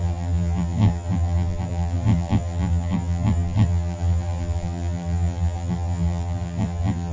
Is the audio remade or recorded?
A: remade